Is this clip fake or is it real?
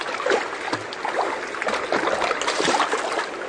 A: real